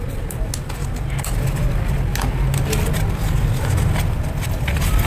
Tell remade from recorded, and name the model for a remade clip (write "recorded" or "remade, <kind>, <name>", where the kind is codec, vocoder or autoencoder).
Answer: recorded